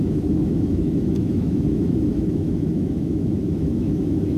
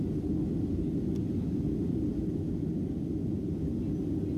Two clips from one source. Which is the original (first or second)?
second